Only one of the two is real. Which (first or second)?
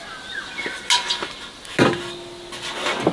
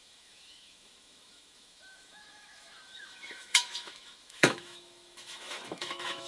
first